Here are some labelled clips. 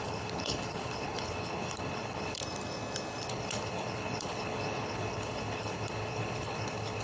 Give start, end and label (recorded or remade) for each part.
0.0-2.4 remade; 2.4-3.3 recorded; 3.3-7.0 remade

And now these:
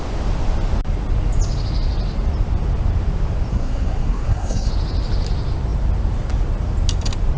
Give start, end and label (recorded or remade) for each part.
0.0-3.5 recorded; 3.5-4.7 remade; 4.7-7.4 recorded

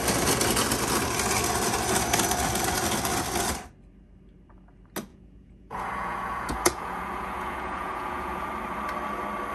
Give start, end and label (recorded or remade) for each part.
0.0-5.1 recorded; 5.1-8.5 remade; 8.5-9.5 recorded

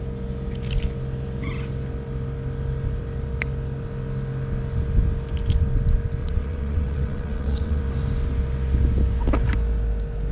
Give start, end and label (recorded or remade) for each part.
0.0-6.2 recorded; 6.2-7.8 remade; 7.8-10.3 recorded

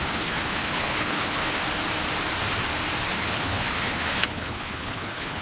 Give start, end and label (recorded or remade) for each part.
0.0-1.6 remade; 1.6-3.1 recorded; 3.1-5.4 remade

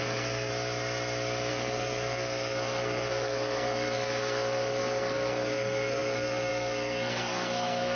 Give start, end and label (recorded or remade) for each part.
0.0-0.5 remade; 0.5-1.5 recorded; 1.5-8.0 remade

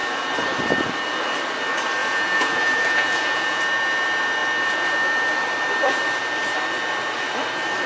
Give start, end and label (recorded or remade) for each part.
0.0-2.0 recorded; 2.0-3.6 remade; 3.6-7.9 recorded